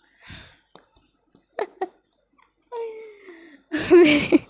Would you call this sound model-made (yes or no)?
no